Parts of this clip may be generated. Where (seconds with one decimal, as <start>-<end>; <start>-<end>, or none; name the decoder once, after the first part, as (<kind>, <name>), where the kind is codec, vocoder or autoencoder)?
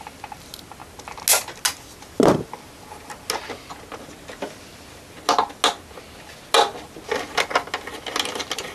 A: none